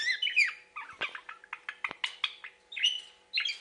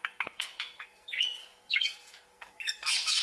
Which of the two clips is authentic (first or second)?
first